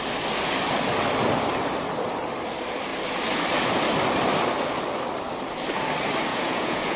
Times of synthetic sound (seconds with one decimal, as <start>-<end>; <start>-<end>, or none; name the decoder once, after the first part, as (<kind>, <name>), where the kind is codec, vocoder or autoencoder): 6.3-7.0 (vocoder, Vocos)